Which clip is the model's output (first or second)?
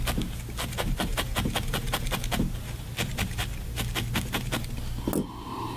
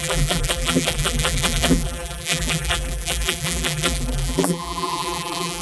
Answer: second